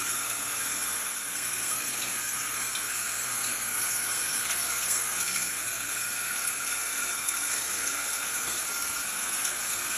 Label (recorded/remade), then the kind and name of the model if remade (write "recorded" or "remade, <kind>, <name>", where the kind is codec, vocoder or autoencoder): remade, codec, SNAC